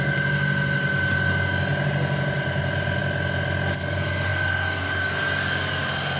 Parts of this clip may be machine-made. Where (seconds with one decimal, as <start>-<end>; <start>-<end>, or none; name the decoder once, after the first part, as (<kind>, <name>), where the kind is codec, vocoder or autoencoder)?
4.3-5.1 (autoencoder, DAC-VAE)